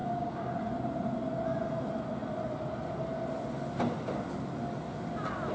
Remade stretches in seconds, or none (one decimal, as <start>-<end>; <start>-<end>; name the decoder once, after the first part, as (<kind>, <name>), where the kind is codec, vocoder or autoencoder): 0.0-0.5 (codec, DAC)